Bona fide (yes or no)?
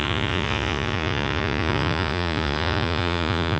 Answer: no